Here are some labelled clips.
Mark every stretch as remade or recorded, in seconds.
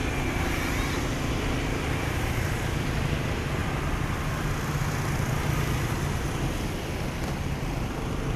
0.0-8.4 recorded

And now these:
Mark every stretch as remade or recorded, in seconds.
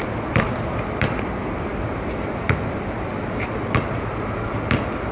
0.0-5.1 recorded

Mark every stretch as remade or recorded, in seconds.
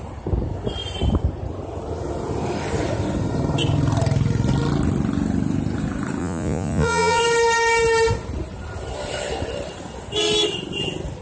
0.0-6.2 recorded; 6.2-7.2 remade; 7.2-11.2 recorded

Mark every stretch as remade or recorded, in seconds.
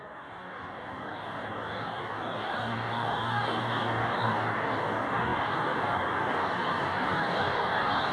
0.0-8.1 remade